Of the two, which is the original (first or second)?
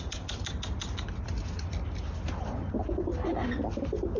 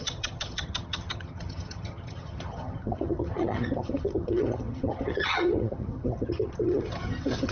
first